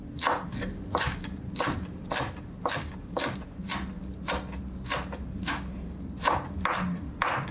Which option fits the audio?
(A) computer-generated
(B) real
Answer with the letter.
B